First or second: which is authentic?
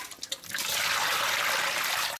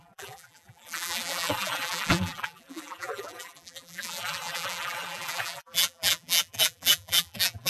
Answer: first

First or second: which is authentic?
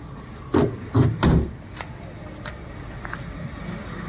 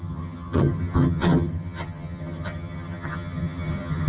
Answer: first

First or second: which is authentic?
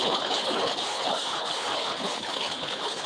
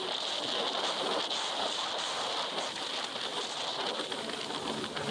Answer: second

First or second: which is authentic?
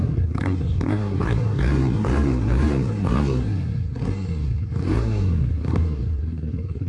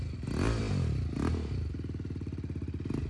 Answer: second